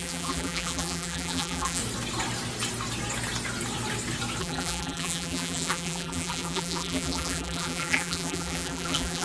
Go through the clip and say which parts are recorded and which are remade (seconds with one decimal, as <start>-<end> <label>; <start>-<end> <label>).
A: 0.0-1.8 remade; 1.8-4.4 recorded; 4.4-9.2 remade